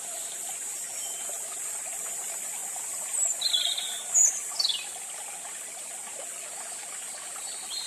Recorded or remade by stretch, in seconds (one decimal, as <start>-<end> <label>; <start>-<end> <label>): 0.0-7.9 recorded